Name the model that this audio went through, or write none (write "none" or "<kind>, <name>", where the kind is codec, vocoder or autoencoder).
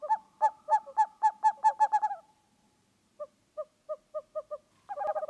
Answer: none